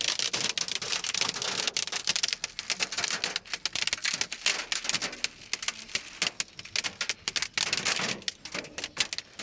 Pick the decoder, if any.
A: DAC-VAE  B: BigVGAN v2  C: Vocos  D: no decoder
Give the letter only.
D